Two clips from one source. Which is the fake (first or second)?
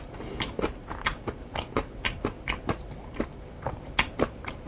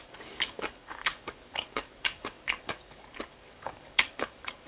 second